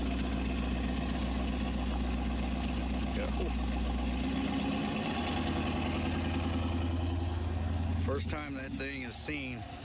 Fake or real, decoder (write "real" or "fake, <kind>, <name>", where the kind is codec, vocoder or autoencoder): real